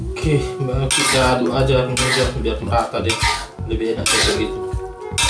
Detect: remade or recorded recorded